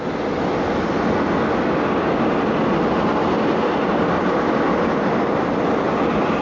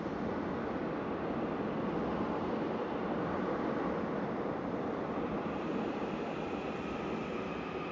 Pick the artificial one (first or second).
second